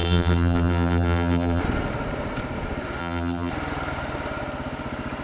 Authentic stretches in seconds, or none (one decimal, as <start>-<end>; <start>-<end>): 1.6-3.0; 3.5-5.2